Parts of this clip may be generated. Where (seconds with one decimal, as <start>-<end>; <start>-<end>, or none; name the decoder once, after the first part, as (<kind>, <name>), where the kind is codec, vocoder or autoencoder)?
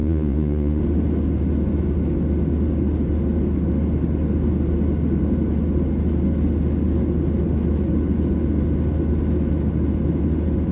0.0-0.8 (vocoder, Vocos)